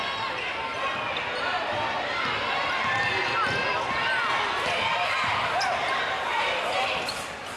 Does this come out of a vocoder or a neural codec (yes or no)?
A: no